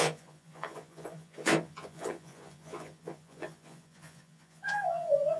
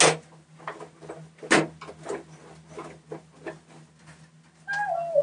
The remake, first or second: first